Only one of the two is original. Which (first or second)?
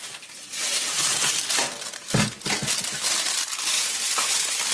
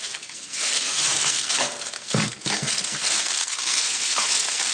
first